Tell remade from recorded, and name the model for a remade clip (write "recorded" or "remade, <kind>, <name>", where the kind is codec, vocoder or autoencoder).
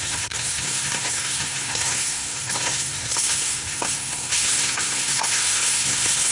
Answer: remade, codec, SNAC